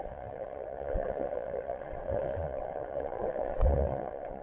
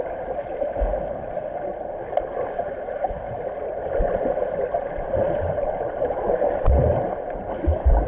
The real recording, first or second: second